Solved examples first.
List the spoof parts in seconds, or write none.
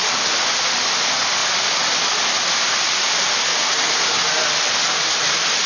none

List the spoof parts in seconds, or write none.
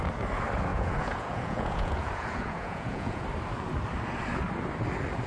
0.7-3.2 (vocoder, Vocos)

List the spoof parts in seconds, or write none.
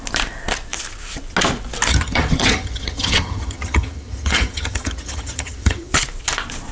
1.9-5.9 (vocoder, HiFi-GAN)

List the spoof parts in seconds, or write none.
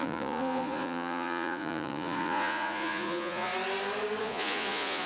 0.0-3.5 (vocoder, Vocos); 4.2-5.1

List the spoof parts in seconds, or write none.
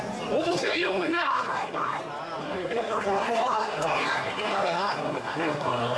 0.4-2.0 (codec, SNAC); 2.4-6.0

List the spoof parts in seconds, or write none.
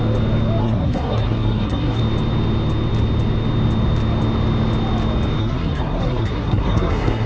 0.6-2.0 (codec, SNAC); 5.4-7.3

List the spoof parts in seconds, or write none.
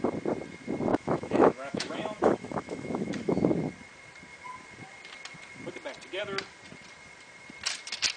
0.9-3.4 (autoencoder, DAC-VAE)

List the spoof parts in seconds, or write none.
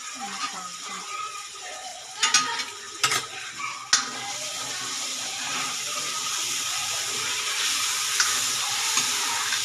0.0-1.9 (vocoder, BigVGAN v2); 2.8-3.8; 4.9-9.6